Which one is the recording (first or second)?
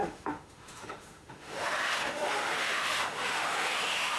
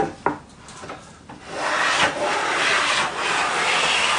second